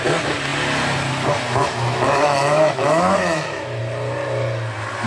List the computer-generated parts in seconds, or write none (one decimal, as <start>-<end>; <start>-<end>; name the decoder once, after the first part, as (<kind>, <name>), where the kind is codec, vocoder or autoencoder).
1.6-3.8 (autoencoder, DAC-VAE)